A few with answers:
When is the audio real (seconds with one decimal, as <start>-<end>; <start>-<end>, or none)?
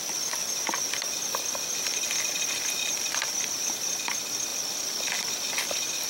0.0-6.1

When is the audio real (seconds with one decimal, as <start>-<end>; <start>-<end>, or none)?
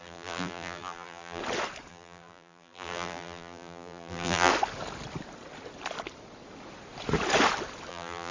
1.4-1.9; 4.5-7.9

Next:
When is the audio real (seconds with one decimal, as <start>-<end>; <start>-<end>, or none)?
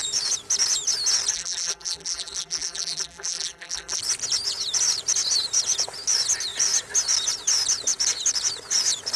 0.0-1.3; 4.0-9.2